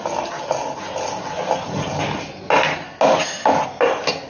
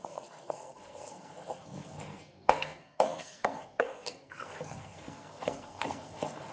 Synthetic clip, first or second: second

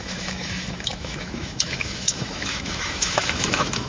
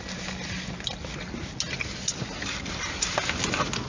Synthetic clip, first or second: first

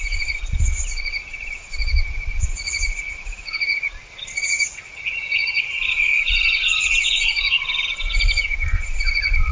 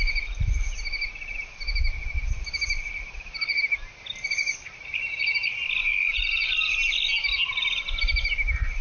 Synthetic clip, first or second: first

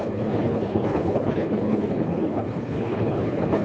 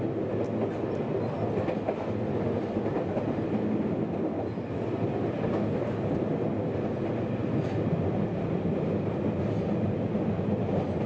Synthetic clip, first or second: first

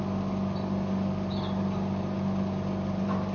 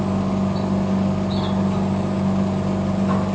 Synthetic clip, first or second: first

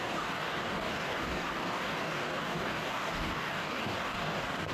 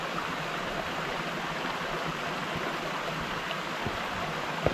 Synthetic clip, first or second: first